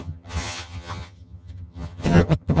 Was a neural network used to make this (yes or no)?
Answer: yes